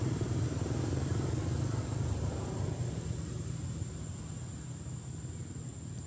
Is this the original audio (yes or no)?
yes